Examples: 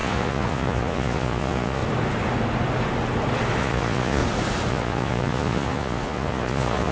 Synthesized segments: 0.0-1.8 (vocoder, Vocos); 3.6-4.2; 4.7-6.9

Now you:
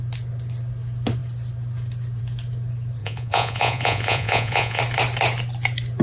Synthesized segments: 3.0-4.8 (vocoder, Vocos)

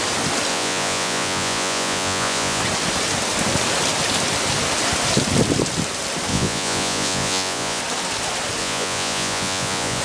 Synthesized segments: 0.5-2.6 (vocoder, Vocos); 6.3-7.8; 8.6-10.0

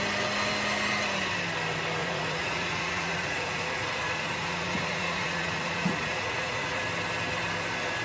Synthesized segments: 2.0-6.8 (vocoder, Vocos)

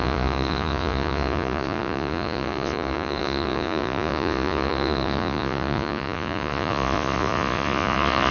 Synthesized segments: 0.0-8.3 (vocoder, Vocos)